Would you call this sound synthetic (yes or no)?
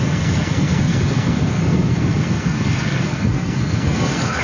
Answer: yes